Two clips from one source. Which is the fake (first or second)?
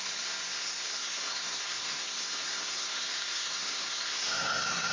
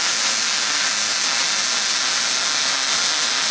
first